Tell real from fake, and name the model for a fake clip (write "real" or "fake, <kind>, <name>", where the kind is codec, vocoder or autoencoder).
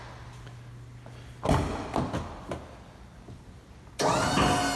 real